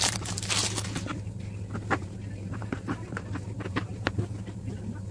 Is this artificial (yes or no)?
yes